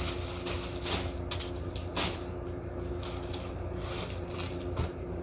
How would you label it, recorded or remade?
recorded